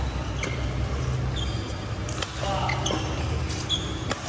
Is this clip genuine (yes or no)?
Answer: yes